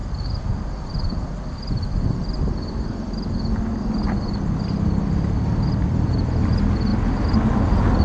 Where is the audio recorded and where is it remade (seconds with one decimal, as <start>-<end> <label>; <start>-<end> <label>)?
0.0-3.7 recorded; 3.7-6.1 remade; 6.1-8.0 recorded